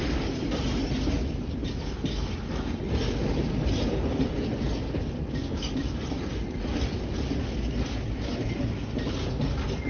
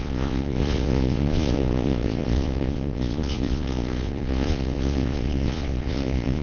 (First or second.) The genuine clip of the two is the first